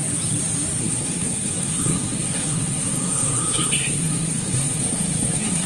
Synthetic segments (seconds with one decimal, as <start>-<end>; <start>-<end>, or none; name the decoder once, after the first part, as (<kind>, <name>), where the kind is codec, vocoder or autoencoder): 0.8-5.7 (codec, SNAC)